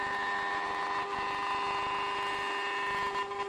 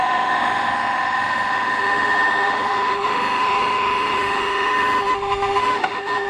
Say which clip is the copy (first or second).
second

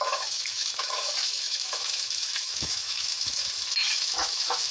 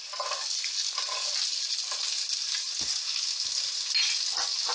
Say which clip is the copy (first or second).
first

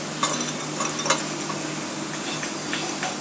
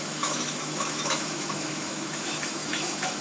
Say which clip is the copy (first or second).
second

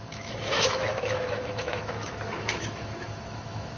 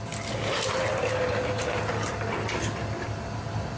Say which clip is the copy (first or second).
first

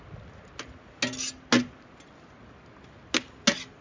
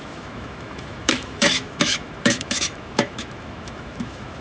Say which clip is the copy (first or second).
second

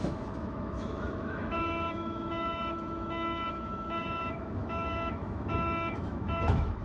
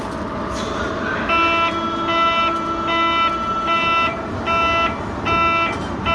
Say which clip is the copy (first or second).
first